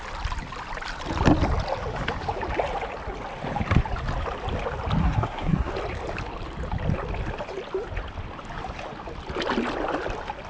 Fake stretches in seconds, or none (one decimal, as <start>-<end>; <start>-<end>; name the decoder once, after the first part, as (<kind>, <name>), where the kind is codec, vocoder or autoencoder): 5.0-5.7 (codec, SNAC)